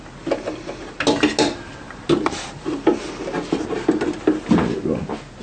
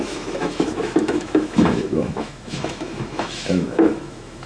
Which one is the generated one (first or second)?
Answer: second